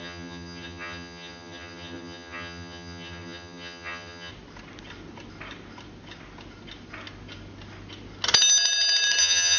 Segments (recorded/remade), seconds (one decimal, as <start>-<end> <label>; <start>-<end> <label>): 0.0-4.3 remade; 4.3-9.2 recorded; 9.2-9.6 remade